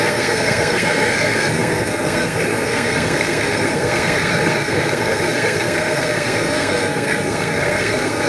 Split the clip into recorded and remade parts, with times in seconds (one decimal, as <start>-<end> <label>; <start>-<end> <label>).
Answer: 0.0-8.3 remade